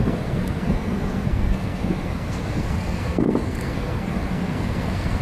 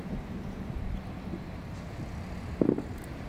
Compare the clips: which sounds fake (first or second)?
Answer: first